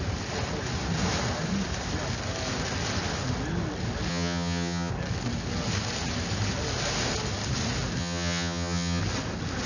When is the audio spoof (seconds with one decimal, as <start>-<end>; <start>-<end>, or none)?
4.1-4.9; 8.0-9.0